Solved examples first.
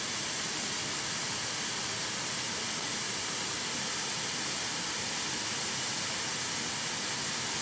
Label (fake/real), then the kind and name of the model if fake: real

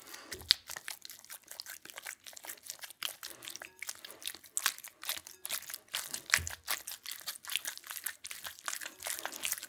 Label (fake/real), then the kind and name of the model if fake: real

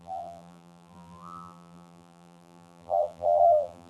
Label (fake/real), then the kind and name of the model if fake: fake, vocoder, BigVGAN v2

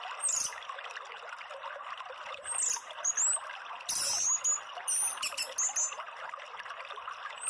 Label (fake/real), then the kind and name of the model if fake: real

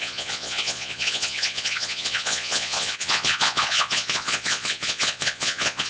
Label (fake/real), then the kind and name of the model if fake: fake, vocoder, Vocos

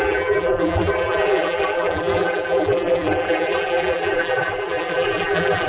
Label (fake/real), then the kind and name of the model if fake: fake, vocoder, BigVGAN v2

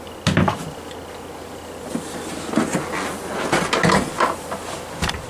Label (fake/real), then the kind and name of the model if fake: real